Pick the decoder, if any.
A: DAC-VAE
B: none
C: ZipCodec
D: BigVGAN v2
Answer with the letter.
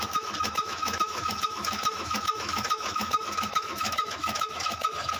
A